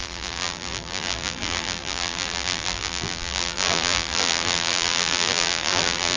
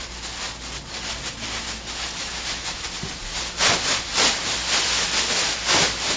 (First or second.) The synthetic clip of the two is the first